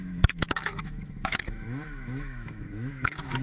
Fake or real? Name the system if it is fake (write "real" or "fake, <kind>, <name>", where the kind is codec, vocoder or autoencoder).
fake, autoencoder, DAC-VAE